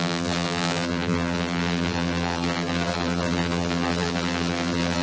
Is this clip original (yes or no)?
no